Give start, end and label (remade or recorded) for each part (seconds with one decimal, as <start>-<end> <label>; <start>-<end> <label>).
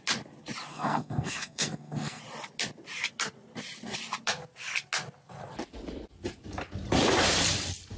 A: 0.0-0.7 recorded; 0.7-2.2 remade; 2.2-8.0 recorded